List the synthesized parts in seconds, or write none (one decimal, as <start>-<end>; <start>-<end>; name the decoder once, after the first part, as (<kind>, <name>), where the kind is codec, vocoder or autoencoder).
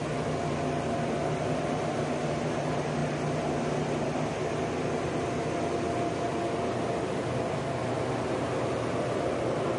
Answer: none